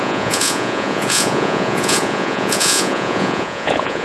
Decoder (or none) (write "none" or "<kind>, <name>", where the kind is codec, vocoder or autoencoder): vocoder, Vocos